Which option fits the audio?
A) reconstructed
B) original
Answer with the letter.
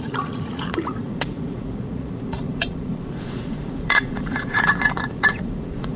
A